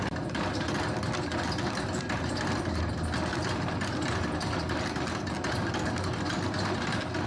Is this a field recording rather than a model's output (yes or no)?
yes